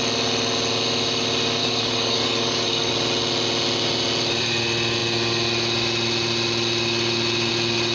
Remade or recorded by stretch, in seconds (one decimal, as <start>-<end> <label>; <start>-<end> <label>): 0.0-1.6 recorded; 1.6-2.9 remade; 2.9-7.9 recorded